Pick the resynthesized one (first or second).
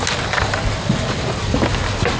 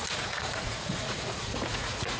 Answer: second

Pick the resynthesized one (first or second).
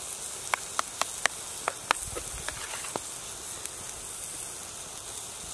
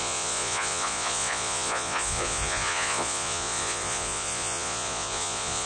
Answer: second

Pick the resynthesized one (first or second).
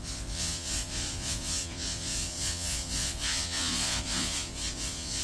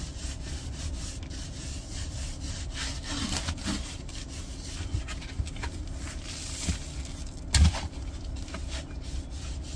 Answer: first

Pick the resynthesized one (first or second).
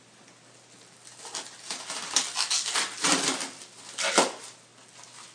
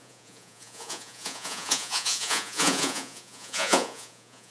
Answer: second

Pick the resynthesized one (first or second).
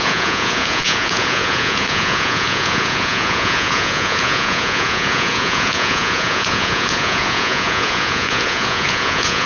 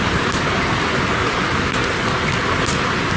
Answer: first